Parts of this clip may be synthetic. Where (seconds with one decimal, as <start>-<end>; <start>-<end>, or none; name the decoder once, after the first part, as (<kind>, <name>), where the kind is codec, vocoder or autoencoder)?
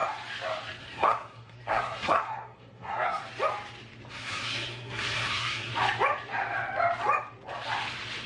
0.8-3.2 (codec, SNAC); 4.1-5.7